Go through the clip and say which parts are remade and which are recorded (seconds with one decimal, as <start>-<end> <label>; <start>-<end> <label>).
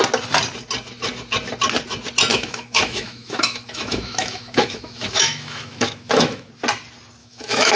0.0-2.3 recorded; 2.3-6.5 remade; 6.5-7.2 recorded; 7.2-7.8 remade